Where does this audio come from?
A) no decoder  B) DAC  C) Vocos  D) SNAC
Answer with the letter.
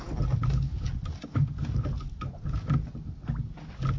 A